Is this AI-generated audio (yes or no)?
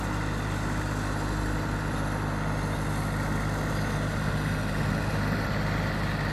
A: no